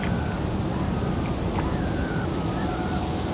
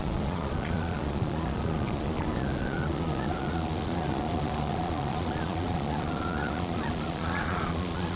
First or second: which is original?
first